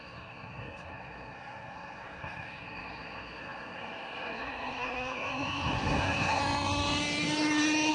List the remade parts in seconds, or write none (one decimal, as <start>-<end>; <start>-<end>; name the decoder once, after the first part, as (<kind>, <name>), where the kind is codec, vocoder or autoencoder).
0.0-6.4 (codec, SNAC)